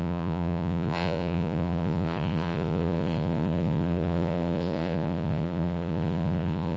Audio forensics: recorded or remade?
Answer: remade